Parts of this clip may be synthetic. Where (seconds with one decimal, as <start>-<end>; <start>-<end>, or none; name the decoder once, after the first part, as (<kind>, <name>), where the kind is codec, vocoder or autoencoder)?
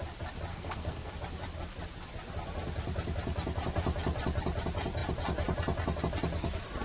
0.5-1.1 (codec, SNAC)